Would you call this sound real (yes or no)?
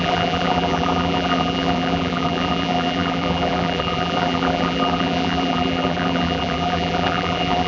no